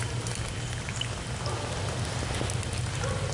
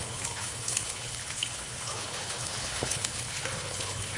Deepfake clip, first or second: second